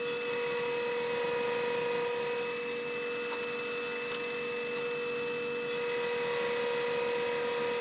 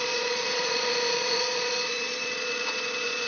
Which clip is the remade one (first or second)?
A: second